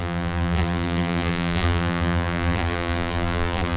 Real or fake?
fake